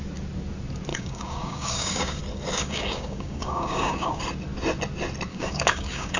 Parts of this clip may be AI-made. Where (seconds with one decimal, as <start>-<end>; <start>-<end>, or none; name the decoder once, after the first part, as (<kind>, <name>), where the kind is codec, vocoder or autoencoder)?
0.9-2.2 (codec, DAC); 2.6-4.2; 5.3-6.2